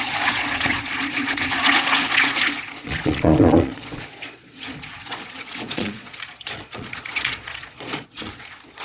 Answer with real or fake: fake